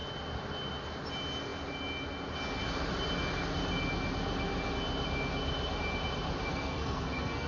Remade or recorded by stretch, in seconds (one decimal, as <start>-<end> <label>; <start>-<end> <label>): 0.0-6.5 recorded; 6.5-7.5 remade